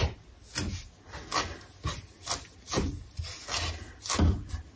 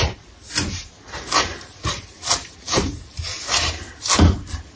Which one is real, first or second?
first